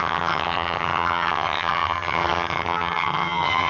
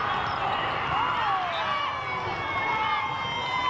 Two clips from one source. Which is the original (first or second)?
second